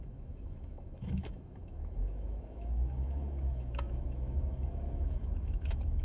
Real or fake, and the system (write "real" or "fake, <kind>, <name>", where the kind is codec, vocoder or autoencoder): fake, autoencoder, DAC-VAE